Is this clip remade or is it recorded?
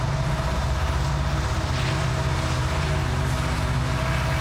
recorded